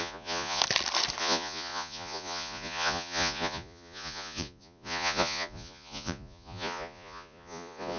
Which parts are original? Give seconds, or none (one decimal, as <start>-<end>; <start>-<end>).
0.6-1.2